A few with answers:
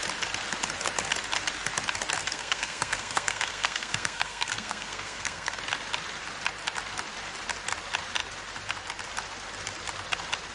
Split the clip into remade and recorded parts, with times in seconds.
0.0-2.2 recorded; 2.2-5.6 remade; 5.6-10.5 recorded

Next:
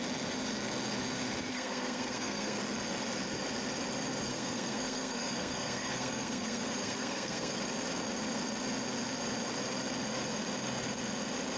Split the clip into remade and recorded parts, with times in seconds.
0.0-1.5 recorded; 1.5-2.6 remade; 2.6-4.3 recorded; 4.3-7.6 remade; 7.6-11.6 recorded

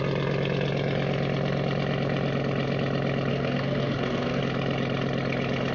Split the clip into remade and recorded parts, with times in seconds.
0.0-3.3 recorded; 3.3-4.4 remade; 4.4-5.7 recorded

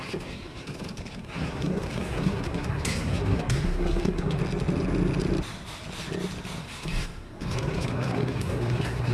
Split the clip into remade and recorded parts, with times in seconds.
0.0-4.4 remade; 4.4-6.6 recorded; 6.6-9.1 remade

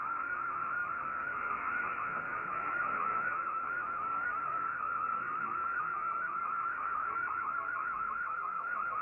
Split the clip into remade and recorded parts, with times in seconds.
0.0-9.0 remade